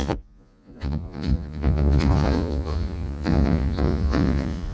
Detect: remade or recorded remade